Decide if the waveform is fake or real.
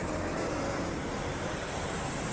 fake